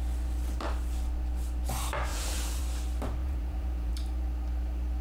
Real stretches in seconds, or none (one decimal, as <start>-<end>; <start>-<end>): 0.0-2.1; 2.6-3.2; 3.9-5.0